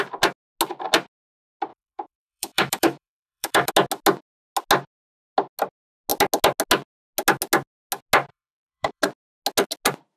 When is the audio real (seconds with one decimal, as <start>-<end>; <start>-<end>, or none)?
0.0-1.7; 3.7-8.3; 9.0-10.2